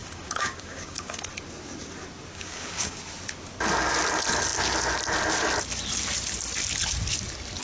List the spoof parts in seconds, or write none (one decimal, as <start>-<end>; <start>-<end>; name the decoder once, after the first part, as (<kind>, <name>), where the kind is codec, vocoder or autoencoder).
0.0-1.2 (codec, DAC); 2.3-3.0